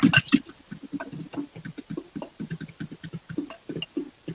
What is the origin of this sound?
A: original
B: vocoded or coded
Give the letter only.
A